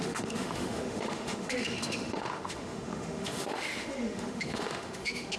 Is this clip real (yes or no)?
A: no